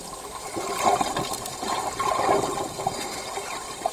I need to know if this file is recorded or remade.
recorded